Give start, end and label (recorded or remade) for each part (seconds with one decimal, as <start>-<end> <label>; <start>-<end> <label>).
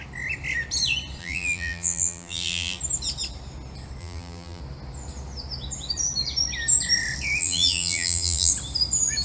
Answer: 0.0-1.2 recorded; 1.2-2.8 remade; 2.8-4.0 recorded; 4.0-4.6 remade; 4.6-7.4 recorded; 7.4-8.5 remade; 8.5-9.2 recorded